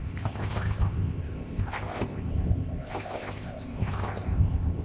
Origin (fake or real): fake